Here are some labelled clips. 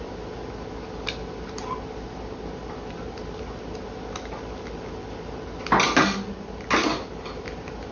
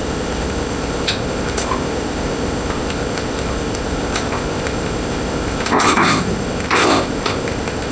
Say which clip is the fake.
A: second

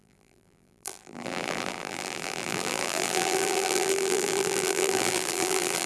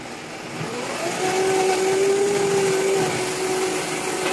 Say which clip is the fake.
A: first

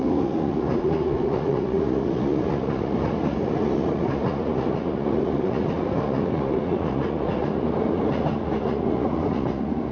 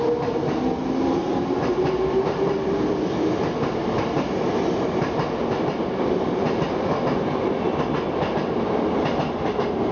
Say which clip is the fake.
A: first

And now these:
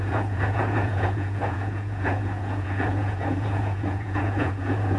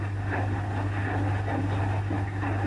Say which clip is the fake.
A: first